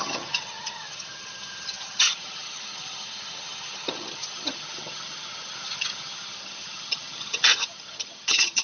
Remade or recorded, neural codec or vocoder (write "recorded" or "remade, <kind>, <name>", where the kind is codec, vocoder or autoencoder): remade, vocoder, HiFi-GAN